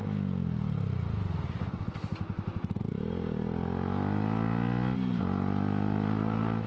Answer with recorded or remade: recorded